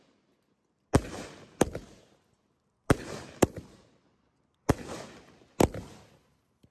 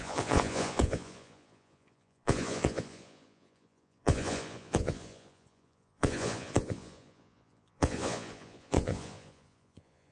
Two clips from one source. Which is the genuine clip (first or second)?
first